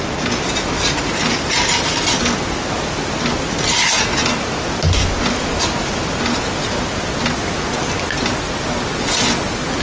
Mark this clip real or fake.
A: real